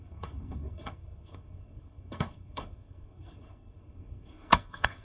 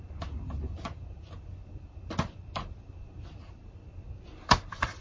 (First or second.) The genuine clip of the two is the second